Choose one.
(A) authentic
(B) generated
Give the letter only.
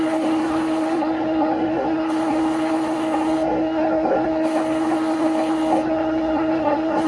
B